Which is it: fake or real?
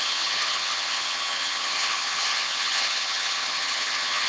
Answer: fake